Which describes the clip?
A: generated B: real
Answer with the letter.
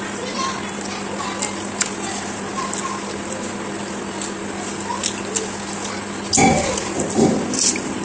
B